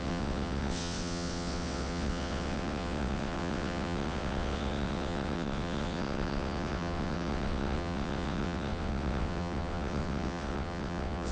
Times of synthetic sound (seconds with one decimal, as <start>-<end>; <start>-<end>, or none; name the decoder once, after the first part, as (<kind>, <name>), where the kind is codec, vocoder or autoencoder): 0.0-11.3 (vocoder, WaveNeXt)